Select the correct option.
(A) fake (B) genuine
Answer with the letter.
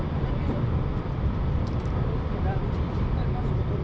A